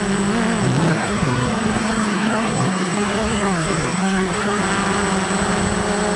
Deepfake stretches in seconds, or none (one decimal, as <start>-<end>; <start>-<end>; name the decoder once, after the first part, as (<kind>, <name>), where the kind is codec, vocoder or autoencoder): 0.9-4.6 (codec, SNAC)